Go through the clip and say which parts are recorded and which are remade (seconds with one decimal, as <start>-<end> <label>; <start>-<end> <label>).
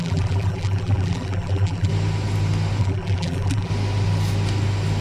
0.0-1.9 remade; 1.9-2.8 recorded; 2.8-3.7 remade; 3.7-5.0 recorded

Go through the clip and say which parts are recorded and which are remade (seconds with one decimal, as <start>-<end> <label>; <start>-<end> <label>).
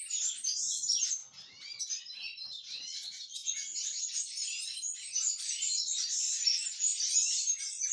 0.0-1.2 remade; 1.2-1.8 recorded; 1.8-3.4 remade; 3.4-4.0 recorded; 4.0-7.9 remade